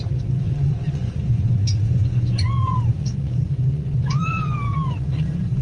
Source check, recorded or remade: remade